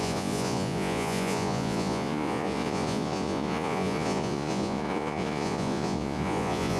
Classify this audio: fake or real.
fake